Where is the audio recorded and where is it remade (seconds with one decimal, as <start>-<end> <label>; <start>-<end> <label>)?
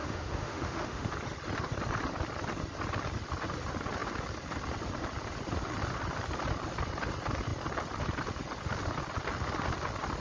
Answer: 0.0-1.1 remade; 1.1-10.2 recorded